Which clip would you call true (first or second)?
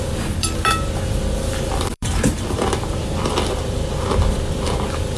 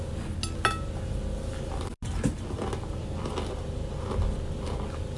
second